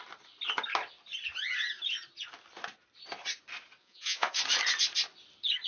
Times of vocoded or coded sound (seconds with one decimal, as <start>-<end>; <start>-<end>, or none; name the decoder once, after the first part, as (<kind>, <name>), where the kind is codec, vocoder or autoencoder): 3.8-4.4 (vocoder, Vocos)

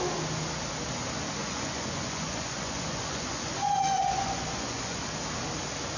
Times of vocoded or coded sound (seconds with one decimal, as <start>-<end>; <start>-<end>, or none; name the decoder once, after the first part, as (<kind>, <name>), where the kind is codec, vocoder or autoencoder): 1.4-5.0 (vocoder, Vocos)

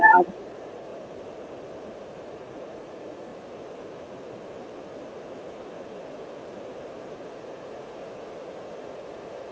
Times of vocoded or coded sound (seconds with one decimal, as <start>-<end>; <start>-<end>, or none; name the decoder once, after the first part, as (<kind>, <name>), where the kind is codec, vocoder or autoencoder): 0.0-0.9 (vocoder, Vocos); 2.3-3.3; 7.4-8.0; 8.8-9.5

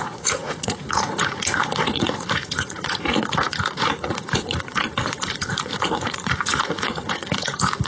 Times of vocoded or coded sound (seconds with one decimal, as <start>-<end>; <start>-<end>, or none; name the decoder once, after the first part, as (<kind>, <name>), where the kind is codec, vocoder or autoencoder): 0.0-7.9 (vocoder, Vocos)

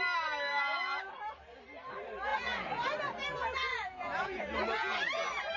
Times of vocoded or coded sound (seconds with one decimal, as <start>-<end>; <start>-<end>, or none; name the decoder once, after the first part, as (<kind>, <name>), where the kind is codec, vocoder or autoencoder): 0.5-1.0 (vocoder, Vocos); 2.3-2.8; 3.7-4.4

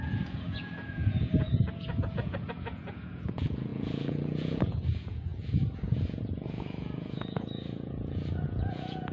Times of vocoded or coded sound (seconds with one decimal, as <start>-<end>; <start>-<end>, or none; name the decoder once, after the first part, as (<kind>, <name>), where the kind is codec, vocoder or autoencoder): 0.0-9.1 (vocoder, Vocos)

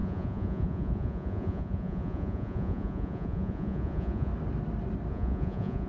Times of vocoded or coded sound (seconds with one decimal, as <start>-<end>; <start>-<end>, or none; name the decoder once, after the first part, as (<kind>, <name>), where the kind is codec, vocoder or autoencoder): 0.0-4.3 (vocoder, Vocos); 5.1-5.9

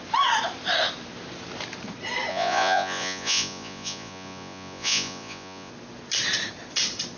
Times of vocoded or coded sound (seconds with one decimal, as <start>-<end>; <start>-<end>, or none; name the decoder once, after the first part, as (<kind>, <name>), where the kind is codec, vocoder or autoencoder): 2.3-5.7 (vocoder, Vocos)